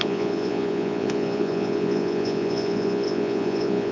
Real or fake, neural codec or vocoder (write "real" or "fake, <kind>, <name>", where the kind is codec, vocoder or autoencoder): fake, vocoder, Vocos